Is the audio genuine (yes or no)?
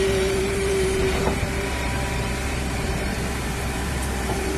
no